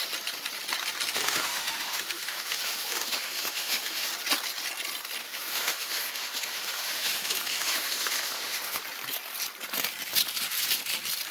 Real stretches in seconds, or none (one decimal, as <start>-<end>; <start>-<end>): 0.0-1.1; 4.1-5.2; 8.8-11.3